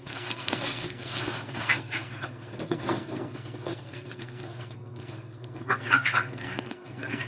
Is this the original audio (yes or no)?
no